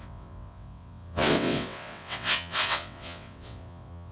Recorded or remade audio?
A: remade